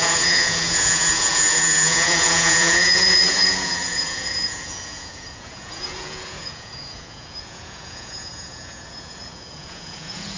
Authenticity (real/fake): fake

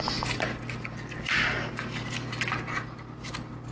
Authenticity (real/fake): real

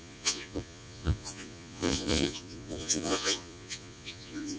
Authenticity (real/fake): fake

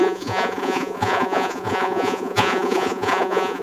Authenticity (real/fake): fake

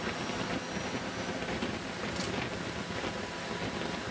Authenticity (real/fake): real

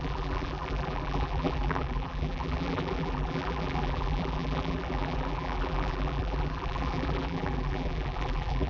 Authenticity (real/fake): fake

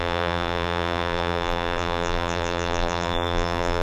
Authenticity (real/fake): fake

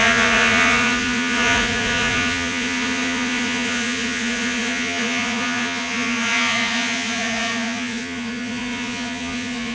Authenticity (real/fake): fake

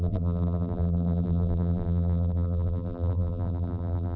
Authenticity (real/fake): fake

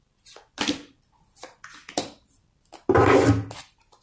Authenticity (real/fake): real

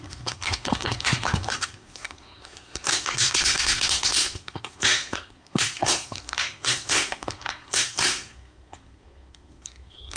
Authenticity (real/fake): fake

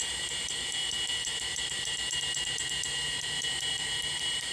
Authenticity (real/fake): fake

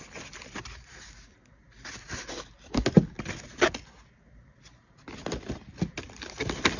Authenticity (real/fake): real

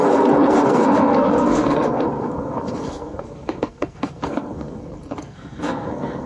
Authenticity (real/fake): fake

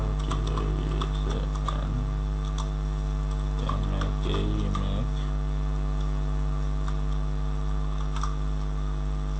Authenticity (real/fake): real